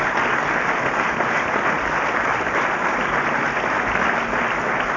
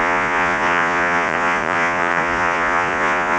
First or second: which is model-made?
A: second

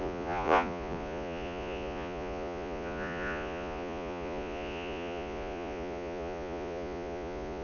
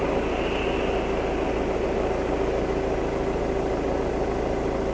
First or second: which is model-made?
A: first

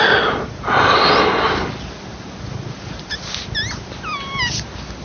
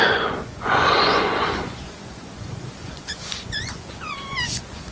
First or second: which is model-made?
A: second